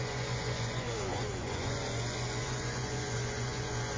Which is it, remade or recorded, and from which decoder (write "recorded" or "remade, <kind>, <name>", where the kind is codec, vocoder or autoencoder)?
remade, vocoder, Vocos